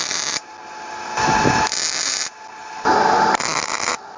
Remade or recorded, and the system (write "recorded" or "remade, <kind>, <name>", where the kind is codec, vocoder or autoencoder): recorded